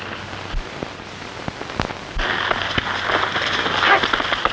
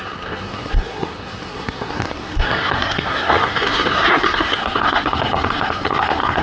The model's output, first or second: second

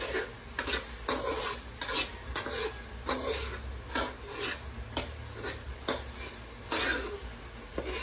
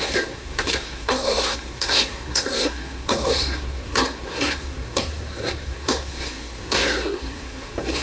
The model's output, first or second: second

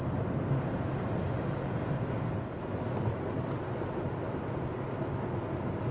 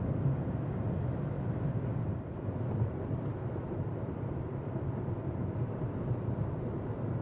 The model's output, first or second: second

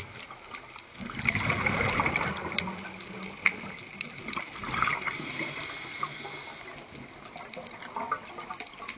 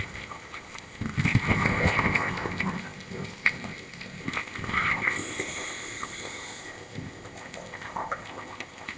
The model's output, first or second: second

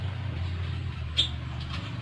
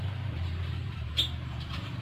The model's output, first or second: second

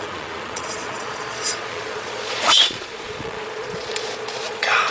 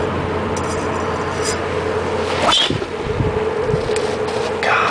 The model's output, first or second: first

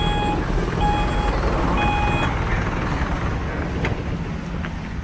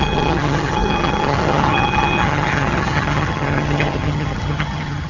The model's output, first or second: second